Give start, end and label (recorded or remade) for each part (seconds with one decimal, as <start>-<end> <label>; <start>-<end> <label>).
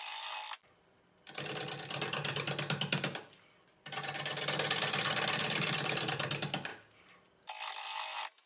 0.0-8.5 recorded